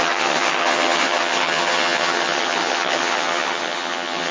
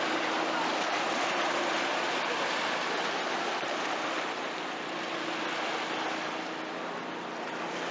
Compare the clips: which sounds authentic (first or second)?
second